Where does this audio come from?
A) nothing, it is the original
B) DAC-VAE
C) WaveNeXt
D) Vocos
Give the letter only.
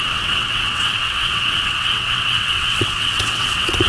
C